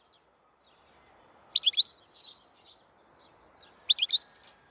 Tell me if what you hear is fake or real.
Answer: real